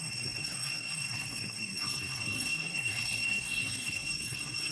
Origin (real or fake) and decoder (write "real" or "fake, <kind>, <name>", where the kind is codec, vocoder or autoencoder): fake, codec, SNAC